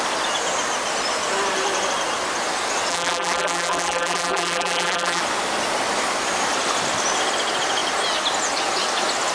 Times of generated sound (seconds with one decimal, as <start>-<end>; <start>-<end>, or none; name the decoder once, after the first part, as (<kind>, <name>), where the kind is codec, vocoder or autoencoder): 2.9-5.2 (vocoder, BigVGAN v2)